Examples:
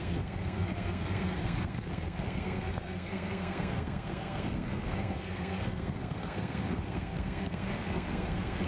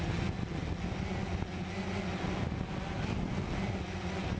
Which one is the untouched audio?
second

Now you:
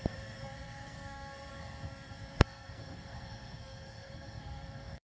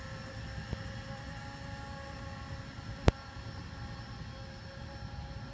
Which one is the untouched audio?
second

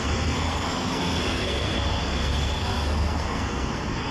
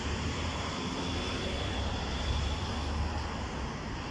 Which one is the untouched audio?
second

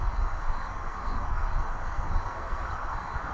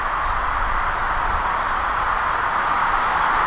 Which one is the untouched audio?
second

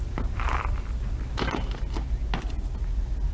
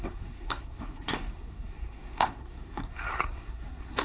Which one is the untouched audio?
first